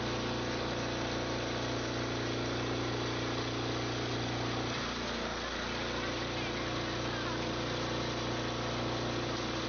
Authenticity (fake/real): real